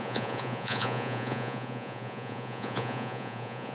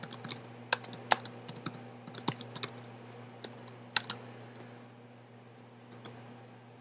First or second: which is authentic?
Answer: second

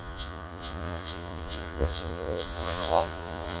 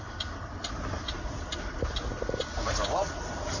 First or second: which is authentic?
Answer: second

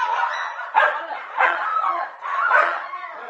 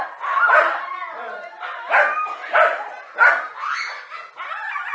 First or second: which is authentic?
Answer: second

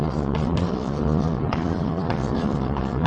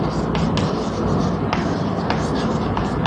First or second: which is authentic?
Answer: second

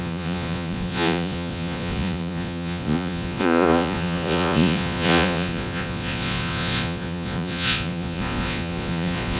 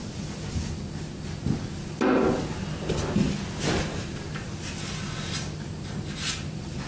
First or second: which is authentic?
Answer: second